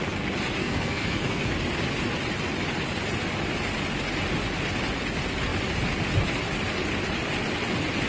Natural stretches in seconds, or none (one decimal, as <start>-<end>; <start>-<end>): 0.0-0.6; 1.5-8.1

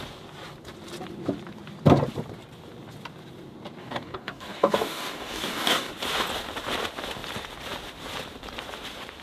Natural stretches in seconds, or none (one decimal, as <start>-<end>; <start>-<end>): 0.0-3.8; 5.9-9.2